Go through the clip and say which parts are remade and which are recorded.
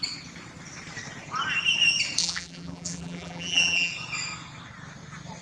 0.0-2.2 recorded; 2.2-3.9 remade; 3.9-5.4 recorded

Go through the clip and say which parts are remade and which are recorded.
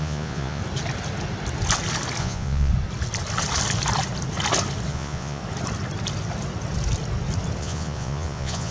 0.0-0.6 remade; 0.6-2.2 recorded; 2.2-2.7 remade; 2.7-4.9 recorded; 4.9-5.4 remade; 5.4-7.6 recorded; 7.6-8.7 remade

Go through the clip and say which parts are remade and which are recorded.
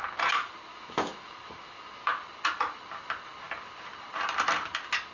0.0-0.7 recorded; 0.7-2.1 remade; 2.1-5.1 recorded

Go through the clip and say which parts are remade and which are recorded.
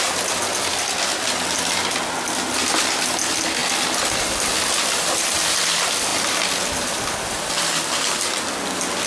0.0-9.1 recorded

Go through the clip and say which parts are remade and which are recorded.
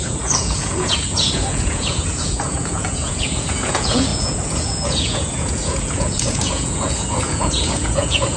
0.0-8.4 remade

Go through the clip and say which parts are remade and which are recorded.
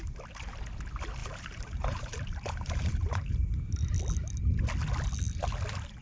0.0-1.2 recorded; 1.2-3.7 remade; 3.7-6.0 recorded